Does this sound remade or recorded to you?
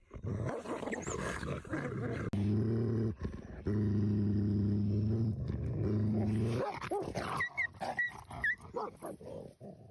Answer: recorded